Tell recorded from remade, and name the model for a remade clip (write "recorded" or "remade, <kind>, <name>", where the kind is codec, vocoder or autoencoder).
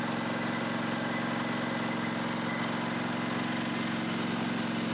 recorded